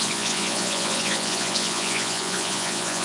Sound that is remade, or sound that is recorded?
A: remade